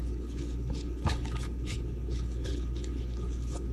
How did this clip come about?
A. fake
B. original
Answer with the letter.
A